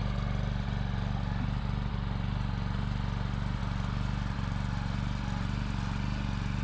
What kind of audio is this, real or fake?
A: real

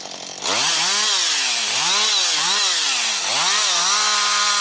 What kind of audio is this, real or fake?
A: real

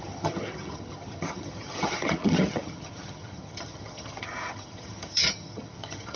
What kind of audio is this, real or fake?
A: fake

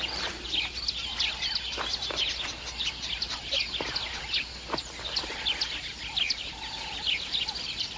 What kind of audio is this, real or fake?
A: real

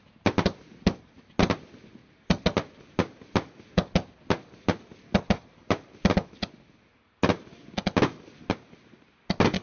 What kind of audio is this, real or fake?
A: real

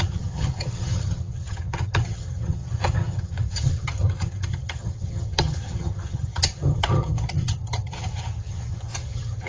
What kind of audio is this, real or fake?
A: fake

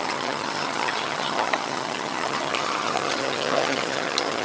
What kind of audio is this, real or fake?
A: fake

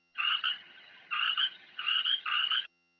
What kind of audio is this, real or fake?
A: fake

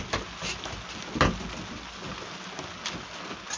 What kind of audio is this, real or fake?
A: real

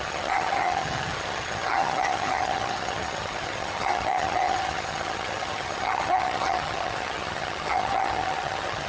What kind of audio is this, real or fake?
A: fake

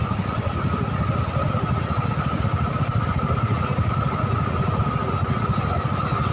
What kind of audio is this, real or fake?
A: real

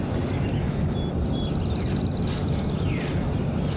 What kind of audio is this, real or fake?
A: real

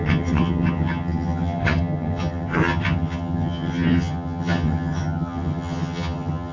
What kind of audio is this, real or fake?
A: fake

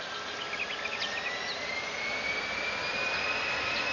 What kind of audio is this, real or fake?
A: real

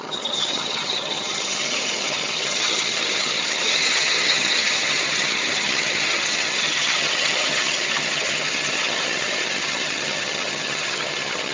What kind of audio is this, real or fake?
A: fake